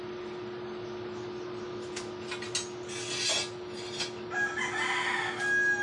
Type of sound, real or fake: real